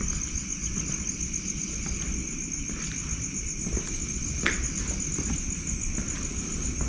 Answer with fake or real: real